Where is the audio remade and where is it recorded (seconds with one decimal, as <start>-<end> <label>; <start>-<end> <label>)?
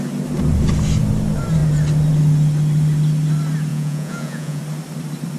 0.0-3.7 recorded; 3.7-4.6 remade; 4.6-5.4 recorded